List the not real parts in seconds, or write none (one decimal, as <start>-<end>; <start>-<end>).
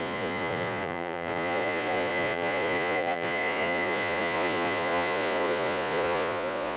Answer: 0.0-6.8